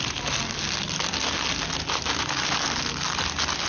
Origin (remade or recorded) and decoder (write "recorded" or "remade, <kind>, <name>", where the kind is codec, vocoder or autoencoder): recorded